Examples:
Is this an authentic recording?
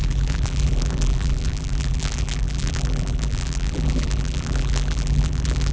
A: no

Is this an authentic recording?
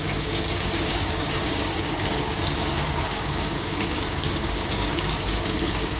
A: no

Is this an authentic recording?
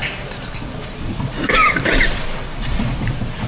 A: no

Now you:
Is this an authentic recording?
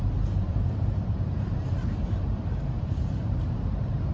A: no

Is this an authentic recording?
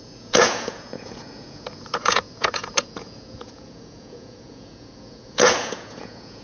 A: no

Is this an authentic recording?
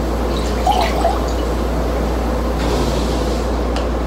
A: yes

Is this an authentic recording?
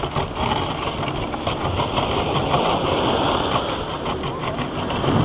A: yes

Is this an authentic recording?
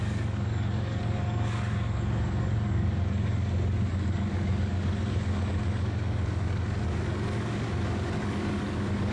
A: no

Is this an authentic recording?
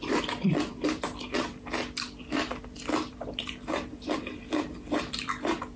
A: no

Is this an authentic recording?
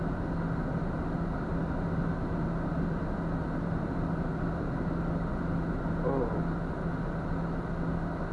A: yes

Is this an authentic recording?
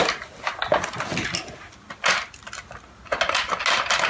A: yes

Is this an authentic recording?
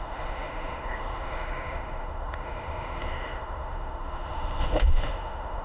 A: no